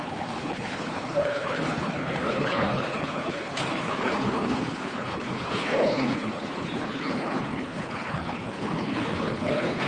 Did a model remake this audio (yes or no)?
yes